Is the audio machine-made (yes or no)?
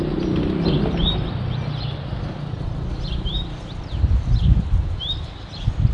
no